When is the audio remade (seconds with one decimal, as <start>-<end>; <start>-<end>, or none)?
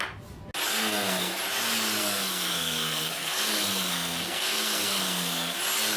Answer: 0.7-1.4; 2.0-5.6